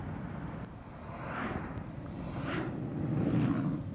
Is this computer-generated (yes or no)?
no